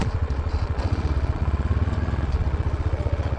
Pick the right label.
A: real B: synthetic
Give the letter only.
B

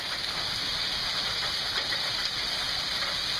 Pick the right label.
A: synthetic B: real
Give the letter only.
B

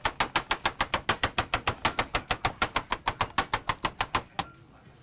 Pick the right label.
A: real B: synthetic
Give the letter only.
A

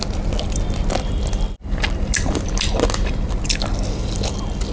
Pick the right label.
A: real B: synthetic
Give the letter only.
A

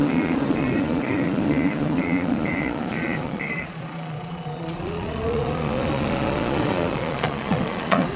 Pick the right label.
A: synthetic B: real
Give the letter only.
A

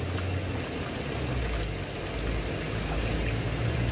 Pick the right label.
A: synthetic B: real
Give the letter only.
B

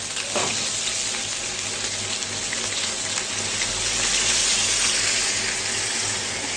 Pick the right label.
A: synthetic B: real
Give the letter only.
B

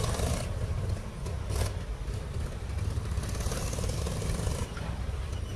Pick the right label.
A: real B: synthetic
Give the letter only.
B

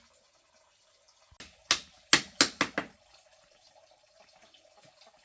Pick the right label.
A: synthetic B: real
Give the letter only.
B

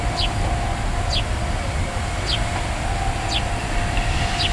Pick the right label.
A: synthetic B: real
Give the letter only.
B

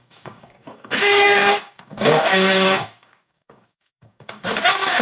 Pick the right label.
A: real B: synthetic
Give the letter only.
B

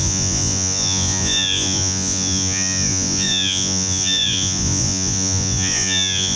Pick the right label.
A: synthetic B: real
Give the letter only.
A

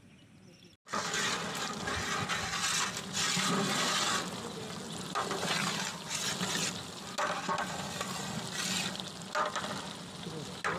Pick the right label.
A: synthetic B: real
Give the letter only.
B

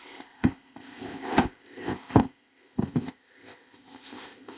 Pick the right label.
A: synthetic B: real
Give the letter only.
A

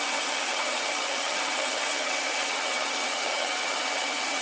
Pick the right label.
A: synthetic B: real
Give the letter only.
A